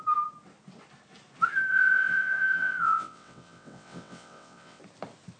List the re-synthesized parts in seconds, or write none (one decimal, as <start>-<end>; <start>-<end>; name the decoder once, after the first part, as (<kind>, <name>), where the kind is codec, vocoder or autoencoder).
1.7-4.8 (vocoder, WaveNeXt)